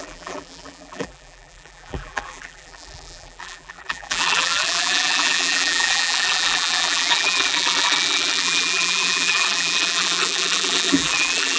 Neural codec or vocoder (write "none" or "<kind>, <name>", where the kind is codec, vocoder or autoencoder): vocoder, BigVGAN v2